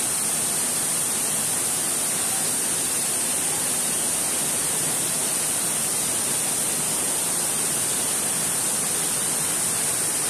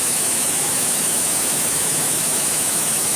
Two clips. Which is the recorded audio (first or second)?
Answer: first